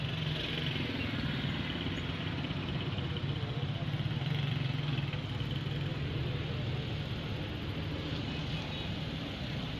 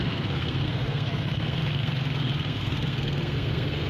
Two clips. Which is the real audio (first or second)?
first